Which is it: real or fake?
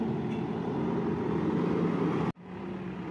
real